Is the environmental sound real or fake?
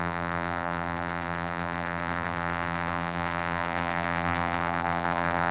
fake